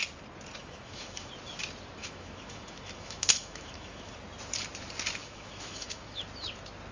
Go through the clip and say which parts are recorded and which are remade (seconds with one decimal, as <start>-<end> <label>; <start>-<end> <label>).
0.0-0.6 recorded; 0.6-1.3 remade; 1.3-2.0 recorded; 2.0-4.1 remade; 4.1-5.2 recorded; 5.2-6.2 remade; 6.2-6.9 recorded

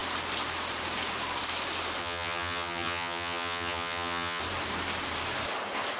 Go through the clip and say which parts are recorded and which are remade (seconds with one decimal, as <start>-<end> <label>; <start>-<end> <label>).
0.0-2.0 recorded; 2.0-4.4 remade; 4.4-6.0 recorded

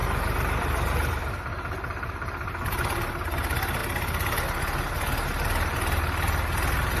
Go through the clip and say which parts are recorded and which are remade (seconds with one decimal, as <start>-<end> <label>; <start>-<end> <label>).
0.0-1.2 remade; 1.2-7.0 recorded